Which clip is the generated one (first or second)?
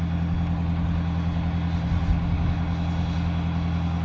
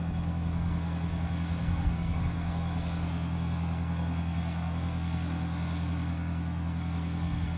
second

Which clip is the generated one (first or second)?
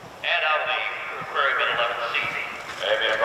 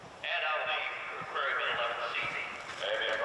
second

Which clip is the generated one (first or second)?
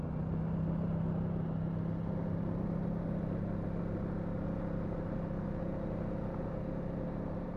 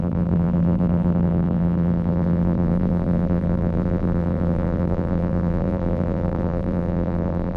second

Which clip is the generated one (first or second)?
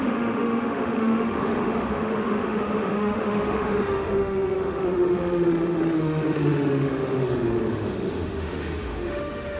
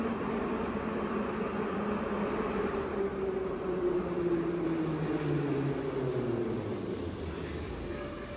first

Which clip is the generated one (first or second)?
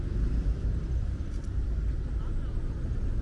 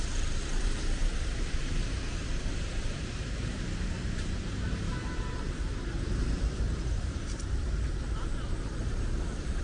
second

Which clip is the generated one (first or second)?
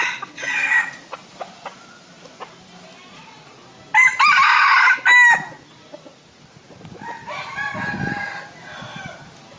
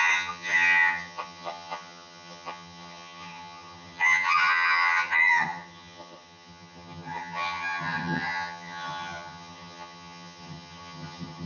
second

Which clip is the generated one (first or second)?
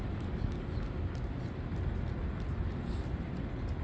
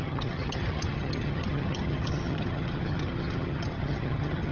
second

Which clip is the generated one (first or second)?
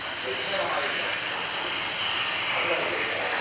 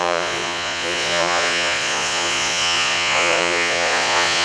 second